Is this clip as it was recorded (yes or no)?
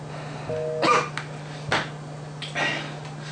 yes